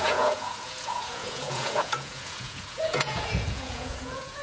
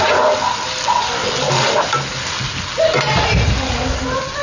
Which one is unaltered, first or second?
second